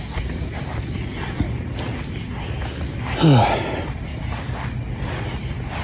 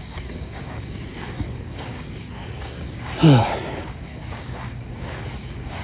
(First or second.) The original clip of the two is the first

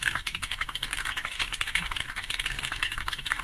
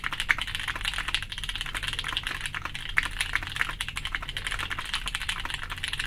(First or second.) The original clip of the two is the second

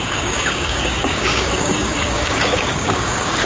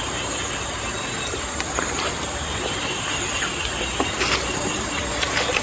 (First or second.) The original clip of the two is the second